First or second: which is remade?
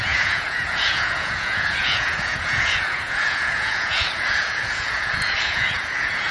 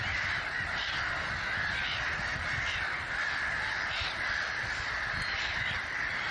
first